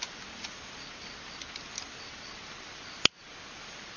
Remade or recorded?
recorded